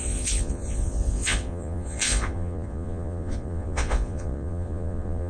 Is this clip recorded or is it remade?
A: remade